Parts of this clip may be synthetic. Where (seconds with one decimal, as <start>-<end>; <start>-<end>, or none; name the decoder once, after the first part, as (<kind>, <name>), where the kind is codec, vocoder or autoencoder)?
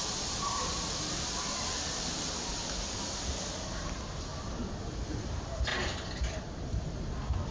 none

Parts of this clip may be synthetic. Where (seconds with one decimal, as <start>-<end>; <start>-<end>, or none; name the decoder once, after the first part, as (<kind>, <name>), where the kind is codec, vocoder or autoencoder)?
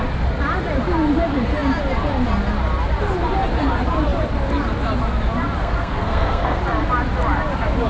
5.6-6.6 (codec, SNAC)